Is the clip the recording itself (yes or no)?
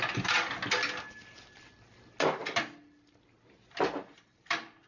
yes